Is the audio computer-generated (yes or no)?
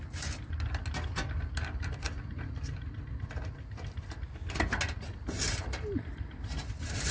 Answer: no